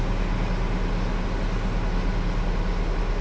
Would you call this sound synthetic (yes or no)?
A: no